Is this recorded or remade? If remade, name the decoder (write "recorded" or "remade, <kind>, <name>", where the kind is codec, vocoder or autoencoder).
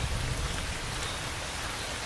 recorded